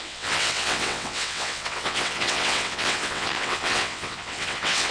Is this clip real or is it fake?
fake